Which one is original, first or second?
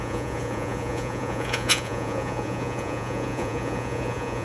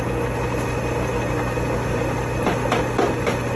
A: second